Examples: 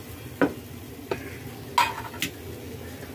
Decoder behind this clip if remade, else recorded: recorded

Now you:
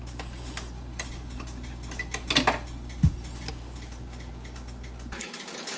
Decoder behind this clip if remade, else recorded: recorded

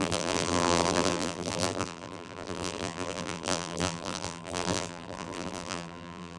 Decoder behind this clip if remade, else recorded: remade, vocoder, BigVGAN v2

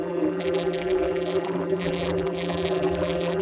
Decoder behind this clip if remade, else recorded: remade, vocoder, BigVGAN v2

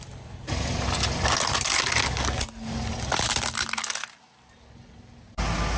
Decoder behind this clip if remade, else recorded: recorded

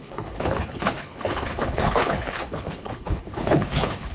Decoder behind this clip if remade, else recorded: remade, codec, HILCodec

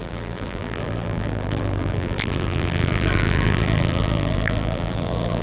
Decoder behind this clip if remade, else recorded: remade, vocoder, BigVGAN v2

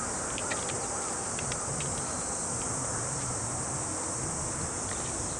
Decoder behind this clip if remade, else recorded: recorded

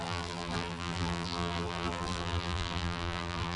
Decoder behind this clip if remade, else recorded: remade, vocoder, BigVGAN v2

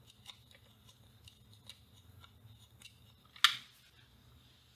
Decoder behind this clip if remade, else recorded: recorded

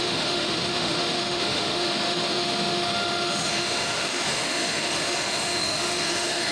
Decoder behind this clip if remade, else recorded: remade, autoencoder, DAC-VAE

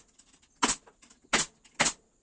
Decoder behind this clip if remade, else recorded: recorded